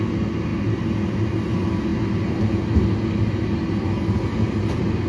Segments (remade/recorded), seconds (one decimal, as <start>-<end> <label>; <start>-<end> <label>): 0.0-5.1 recorded